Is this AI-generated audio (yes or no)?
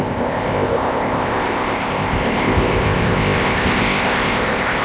yes